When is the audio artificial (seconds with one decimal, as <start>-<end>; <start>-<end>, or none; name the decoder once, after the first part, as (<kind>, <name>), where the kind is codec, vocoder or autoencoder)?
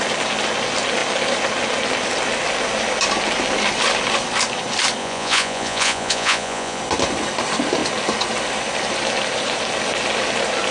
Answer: 5.0-6.8 (vocoder, Vocos)